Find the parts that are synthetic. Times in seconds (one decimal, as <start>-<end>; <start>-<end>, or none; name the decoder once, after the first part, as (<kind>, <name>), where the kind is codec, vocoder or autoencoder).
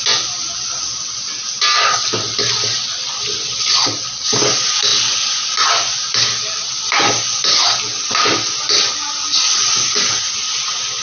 none